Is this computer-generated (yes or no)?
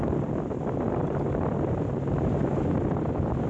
yes